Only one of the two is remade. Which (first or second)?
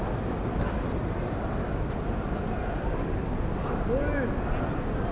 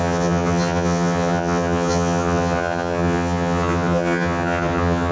second